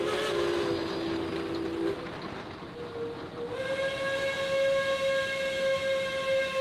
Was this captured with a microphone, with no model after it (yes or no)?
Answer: yes